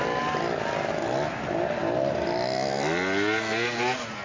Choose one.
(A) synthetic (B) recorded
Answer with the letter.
B